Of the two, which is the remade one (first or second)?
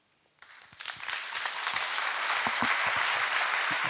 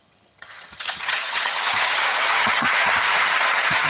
second